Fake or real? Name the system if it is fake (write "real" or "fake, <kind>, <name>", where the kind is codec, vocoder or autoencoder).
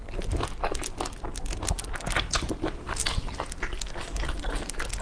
real